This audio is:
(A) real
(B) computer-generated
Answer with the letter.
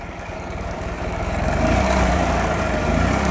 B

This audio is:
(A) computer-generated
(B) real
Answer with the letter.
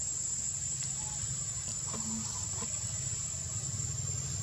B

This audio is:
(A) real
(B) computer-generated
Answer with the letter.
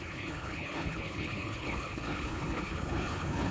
B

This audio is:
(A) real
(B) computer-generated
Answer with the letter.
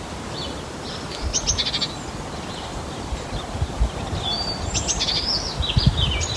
A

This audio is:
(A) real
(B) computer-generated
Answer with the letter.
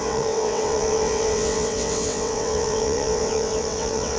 B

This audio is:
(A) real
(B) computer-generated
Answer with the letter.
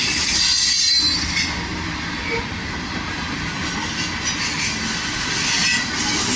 A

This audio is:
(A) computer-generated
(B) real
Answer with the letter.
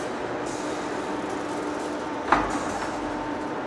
B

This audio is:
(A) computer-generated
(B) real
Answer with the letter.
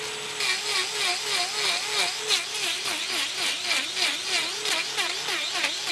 B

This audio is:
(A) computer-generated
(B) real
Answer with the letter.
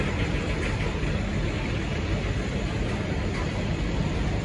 B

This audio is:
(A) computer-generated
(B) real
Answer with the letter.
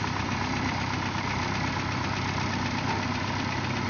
B